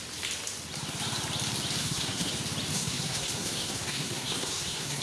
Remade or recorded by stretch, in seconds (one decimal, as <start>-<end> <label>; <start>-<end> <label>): 0.0-1.8 recorded; 1.8-2.3 remade; 2.3-2.7 recorded; 2.7-5.0 remade